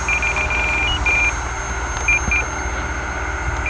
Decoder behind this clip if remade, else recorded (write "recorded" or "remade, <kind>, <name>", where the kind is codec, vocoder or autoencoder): recorded